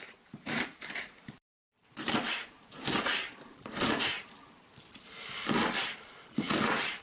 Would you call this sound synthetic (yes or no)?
yes